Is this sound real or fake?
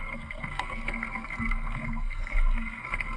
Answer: fake